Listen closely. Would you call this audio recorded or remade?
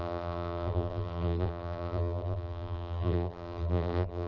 remade